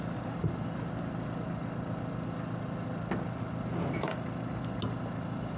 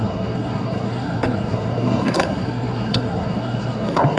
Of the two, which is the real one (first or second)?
first